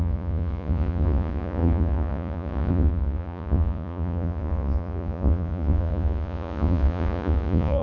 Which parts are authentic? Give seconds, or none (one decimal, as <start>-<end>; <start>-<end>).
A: none